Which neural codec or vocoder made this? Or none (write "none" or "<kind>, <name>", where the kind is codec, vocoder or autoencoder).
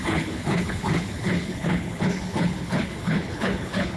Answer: codec, HILCodec